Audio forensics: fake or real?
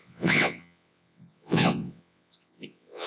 fake